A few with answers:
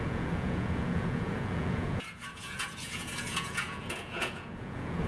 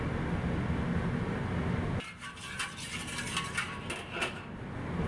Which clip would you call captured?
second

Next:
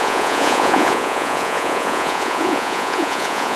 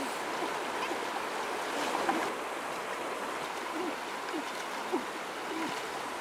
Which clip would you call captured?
second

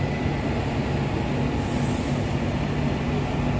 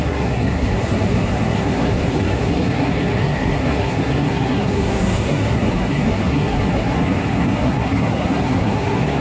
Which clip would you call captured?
first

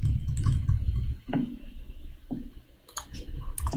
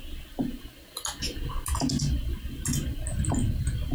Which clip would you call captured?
second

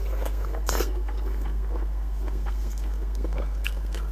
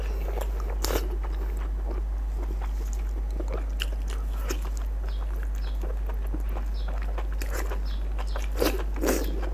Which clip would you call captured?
second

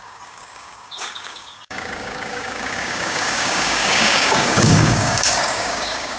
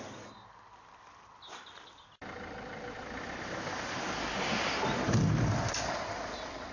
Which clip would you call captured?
second